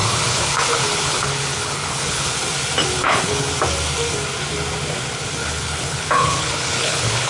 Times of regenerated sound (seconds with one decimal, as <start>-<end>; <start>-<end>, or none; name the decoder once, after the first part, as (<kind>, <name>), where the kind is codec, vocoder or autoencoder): 0.0-2.3 (codec, HILCodec); 3.0-3.5; 5.4-7.3